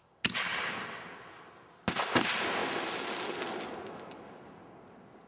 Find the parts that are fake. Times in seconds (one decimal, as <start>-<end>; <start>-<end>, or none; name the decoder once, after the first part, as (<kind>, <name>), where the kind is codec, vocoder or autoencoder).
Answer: none